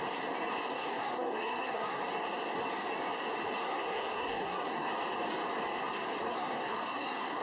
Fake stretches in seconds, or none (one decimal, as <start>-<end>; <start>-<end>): 0.7-2.0; 3.6-4.9; 6.3-7.4

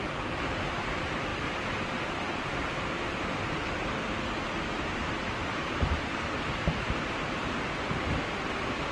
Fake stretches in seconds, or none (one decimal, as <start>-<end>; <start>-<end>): none

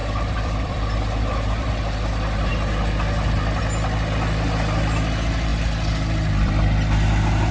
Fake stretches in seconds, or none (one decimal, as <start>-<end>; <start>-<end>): 0.0-1.7; 5.5-6.5